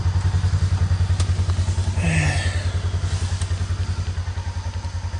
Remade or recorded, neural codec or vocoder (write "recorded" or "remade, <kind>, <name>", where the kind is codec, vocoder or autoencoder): recorded